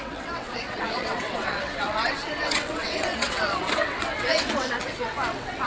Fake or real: fake